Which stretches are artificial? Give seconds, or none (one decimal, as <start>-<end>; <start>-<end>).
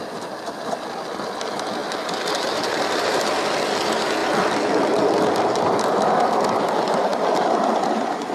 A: 1.8-3.2; 4.2-4.7; 7.1-8.3